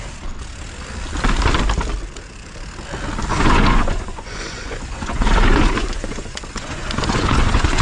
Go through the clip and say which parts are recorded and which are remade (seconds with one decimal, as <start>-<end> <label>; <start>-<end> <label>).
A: 0.0-3.3 recorded; 3.3-7.8 remade